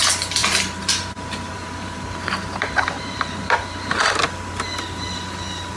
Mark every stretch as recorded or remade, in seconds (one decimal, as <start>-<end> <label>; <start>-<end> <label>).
0.0-0.4 recorded; 0.4-3.9 remade; 3.9-5.8 recorded